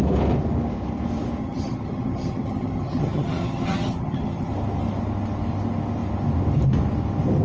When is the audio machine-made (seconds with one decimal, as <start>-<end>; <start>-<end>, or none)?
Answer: 1.4-4.5